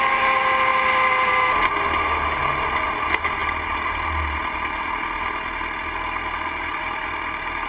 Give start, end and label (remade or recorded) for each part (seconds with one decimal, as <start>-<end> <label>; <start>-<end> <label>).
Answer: 0.0-7.7 recorded